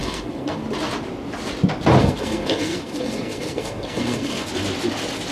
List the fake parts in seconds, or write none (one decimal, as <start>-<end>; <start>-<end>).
0.0-0.6; 2.0-4.5